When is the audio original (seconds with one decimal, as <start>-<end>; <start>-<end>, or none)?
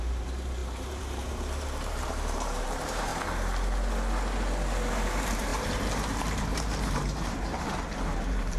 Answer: 3.1-4.9